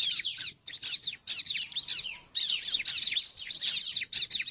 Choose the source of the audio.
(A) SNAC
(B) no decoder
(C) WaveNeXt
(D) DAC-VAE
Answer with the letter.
B